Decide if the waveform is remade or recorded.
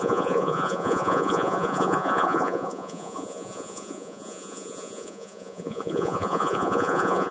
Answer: remade